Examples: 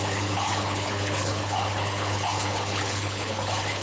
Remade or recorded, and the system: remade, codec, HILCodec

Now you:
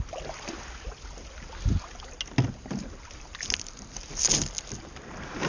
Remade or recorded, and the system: recorded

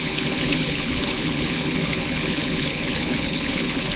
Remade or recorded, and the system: remade, codec, HILCodec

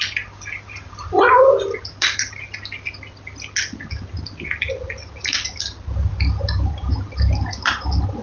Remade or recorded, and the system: recorded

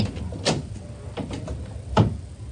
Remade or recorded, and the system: recorded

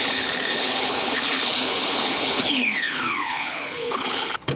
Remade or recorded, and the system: remade, codec, HILCodec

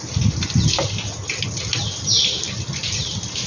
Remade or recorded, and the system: recorded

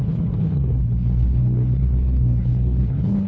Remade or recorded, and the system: remade, codec, HILCodec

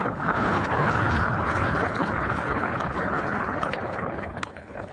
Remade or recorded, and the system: remade, codec, HILCodec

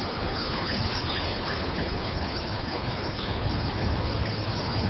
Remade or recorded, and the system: remade, codec, HILCodec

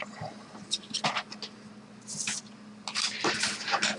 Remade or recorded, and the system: recorded